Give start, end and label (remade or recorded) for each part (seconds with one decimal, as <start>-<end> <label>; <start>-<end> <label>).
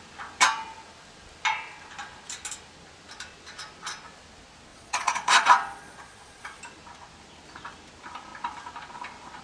0.0-4.7 recorded; 4.7-6.6 remade; 6.6-9.4 recorded